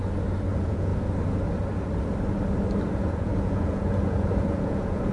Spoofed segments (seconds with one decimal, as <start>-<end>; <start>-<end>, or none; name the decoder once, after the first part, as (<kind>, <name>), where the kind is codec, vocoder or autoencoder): 0.5-0.9 (vocoder, Vocos); 2.9-5.1